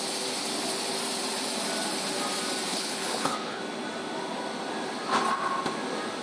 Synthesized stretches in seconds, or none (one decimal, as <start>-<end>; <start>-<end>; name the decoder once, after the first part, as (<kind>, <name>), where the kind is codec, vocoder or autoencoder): 2.7-3.6 (codec, HILCodec)